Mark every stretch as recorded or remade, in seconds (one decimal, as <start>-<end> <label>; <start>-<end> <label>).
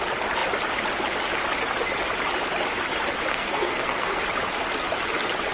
0.0-3.3 recorded; 3.3-4.2 remade; 4.2-5.5 recorded